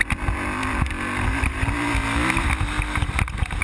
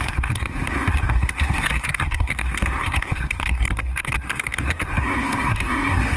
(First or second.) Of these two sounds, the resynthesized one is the second